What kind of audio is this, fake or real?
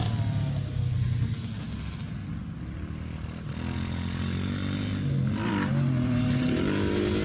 real